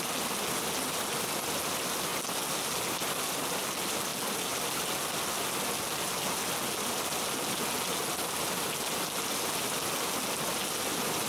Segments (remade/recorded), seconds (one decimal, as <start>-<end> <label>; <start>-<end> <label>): 0.0-11.3 recorded